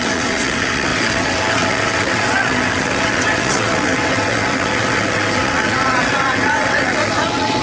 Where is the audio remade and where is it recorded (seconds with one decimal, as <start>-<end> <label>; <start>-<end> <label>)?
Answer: 0.0-7.6 remade